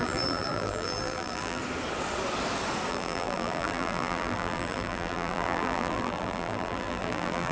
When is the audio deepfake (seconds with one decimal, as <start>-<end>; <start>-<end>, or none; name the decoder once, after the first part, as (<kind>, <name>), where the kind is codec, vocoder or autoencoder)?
0.0-1.6 (vocoder, BigVGAN v2); 2.9-7.5